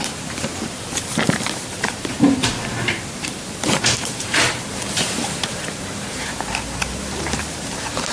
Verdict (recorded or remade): remade